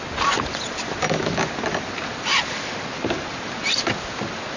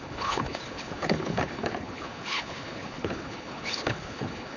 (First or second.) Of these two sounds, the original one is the first